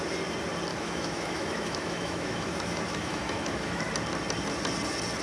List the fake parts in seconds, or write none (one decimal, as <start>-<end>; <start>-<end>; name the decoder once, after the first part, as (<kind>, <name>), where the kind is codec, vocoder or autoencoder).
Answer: 0.7-3.8 (autoencoder, DAC-VAE)

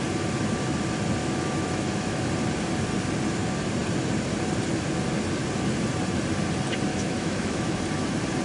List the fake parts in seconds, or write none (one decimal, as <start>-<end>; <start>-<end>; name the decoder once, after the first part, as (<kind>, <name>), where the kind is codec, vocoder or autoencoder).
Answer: 1.2-2.2 (autoencoder, DAC-VAE); 6.9-7.8